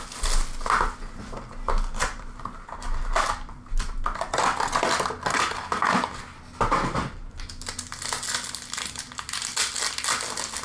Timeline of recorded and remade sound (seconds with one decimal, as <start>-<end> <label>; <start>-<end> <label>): 0.0-10.6 recorded